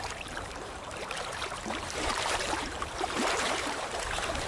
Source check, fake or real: fake